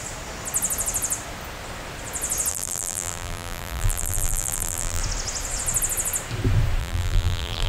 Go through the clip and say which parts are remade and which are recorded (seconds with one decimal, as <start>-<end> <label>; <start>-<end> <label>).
0.0-2.5 recorded; 2.5-5.0 remade; 5.0-6.8 recorded; 6.8-7.7 remade